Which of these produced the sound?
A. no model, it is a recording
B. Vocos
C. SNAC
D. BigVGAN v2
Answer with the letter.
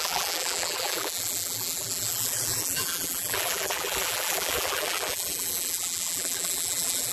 D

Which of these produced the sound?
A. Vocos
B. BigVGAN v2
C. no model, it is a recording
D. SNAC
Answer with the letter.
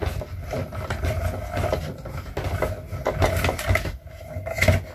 C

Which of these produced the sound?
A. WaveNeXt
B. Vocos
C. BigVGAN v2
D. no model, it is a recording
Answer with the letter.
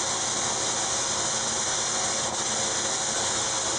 D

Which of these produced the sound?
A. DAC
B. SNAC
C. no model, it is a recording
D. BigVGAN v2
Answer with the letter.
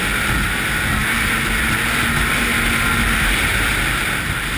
D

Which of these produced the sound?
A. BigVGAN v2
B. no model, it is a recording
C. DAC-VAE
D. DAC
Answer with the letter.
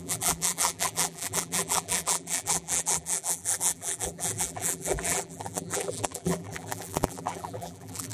A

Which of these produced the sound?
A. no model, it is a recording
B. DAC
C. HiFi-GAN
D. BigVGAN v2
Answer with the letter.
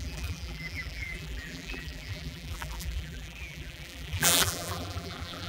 D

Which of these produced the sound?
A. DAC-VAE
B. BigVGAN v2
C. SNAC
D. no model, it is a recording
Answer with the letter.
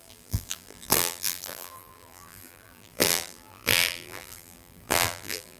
B